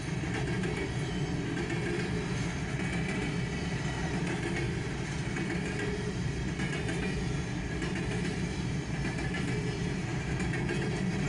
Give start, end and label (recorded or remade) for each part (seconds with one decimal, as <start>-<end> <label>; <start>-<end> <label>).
0.0-11.3 recorded